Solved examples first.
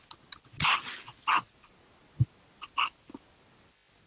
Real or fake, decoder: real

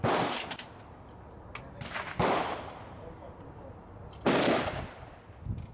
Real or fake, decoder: real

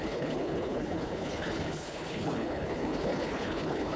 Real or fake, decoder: fake, codec, HILCodec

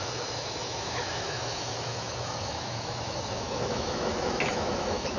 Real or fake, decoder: fake, autoencoder, DAC-VAE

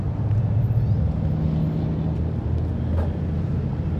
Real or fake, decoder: real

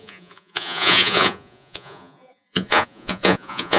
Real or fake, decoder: fake, vocoder, Vocos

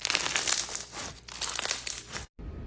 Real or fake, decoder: real